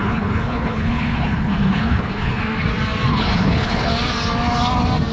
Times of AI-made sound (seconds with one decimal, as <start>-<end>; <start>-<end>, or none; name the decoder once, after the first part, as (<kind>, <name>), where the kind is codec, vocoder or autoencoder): 0.0-2.4 (codec, HILCodec); 3.1-3.9